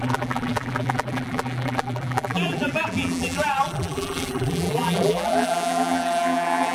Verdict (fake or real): fake